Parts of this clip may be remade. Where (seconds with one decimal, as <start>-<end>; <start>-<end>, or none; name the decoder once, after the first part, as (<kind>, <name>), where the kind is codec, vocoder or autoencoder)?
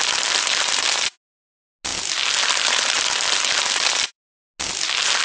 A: none